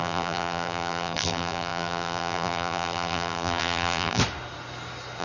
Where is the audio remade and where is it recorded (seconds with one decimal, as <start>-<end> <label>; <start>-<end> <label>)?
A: 0.0-4.2 remade; 4.2-5.2 recorded